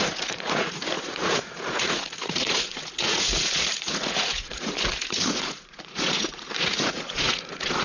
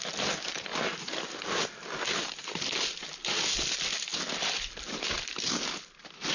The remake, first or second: first